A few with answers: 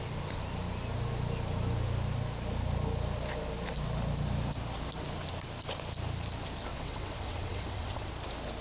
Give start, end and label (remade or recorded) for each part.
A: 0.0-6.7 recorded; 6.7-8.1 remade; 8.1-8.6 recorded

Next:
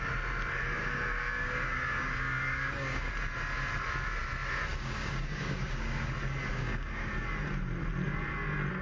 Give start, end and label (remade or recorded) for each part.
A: 0.0-0.8 recorded; 0.8-3.1 remade; 3.1-4.7 recorded; 4.7-6.1 remade; 6.1-6.5 recorded; 6.5-7.1 remade; 7.1-8.8 recorded

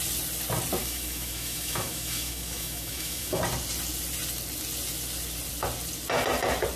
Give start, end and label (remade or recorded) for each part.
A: 0.0-0.8 recorded; 0.8-3.4 remade; 3.4-6.8 recorded

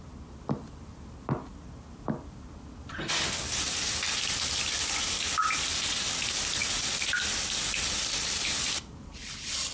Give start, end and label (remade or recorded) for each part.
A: 0.0-9.7 recorded

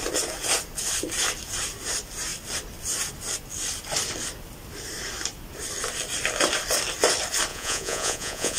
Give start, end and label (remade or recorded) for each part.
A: 0.0-7.5 recorded; 7.5-8.6 remade